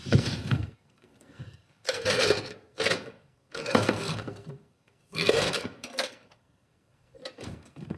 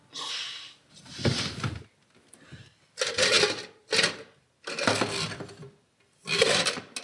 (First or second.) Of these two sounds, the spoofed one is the first